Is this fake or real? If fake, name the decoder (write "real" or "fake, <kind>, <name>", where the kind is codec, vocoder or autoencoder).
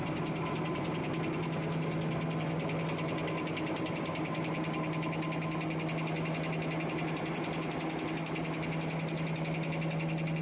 real